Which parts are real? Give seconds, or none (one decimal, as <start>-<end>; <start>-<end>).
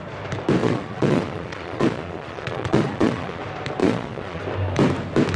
0.0-0.6; 3.4-3.8; 4.4-5.4